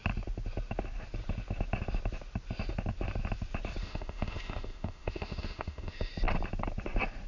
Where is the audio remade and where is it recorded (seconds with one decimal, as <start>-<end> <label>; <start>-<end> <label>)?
0.0-3.8 recorded; 3.8-6.1 remade; 6.1-7.3 recorded